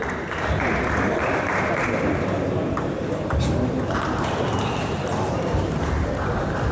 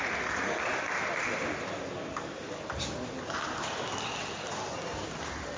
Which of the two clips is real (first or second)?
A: second